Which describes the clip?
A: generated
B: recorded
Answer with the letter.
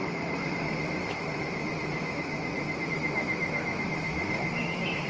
A